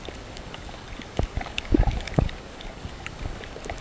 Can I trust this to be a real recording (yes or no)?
no